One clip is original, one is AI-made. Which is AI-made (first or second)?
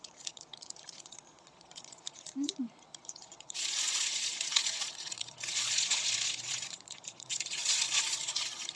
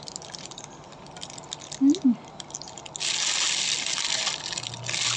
first